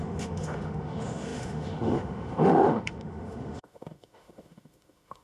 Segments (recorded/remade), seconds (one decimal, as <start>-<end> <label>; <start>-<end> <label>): 0.0-5.2 remade